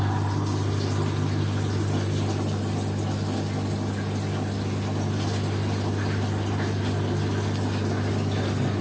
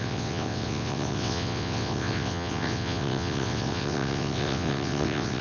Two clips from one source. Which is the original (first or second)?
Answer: first